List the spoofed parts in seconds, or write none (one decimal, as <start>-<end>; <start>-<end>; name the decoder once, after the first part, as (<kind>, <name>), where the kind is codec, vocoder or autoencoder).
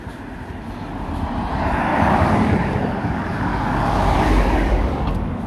1.9-5.5 (codec, DAC)